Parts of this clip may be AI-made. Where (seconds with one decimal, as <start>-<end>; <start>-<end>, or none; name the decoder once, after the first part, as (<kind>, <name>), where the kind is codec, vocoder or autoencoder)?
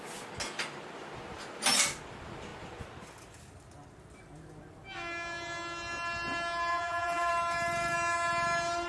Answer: 6.7-7.3 (vocoder, BigVGAN v2)